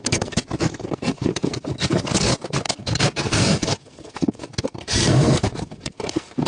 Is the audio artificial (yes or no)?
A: yes